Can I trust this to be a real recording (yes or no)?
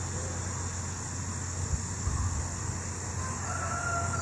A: yes